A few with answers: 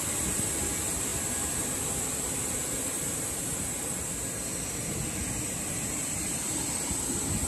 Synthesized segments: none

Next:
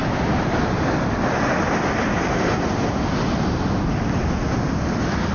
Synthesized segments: none

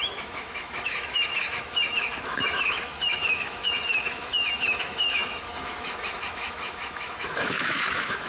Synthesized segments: 0.0-8.3 (autoencoder, DAC-VAE)

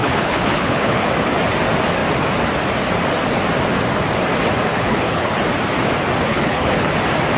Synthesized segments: 0.0-1.1 (codec, HILCodec); 4.7-5.4; 6.3-6.9